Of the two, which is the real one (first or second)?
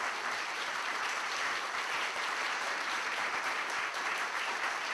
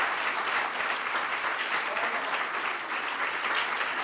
second